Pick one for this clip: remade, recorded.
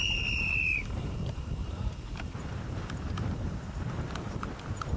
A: remade